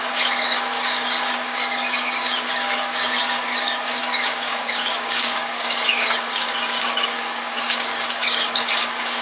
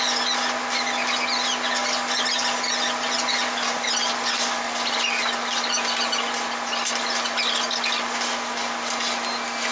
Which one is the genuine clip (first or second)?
second